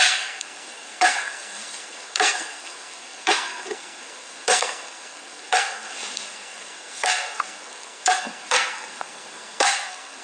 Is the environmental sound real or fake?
fake